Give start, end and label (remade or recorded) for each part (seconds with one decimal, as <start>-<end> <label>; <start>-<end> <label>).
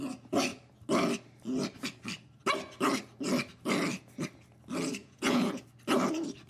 0.0-5.0 recorded; 5.0-5.6 remade; 5.6-6.5 recorded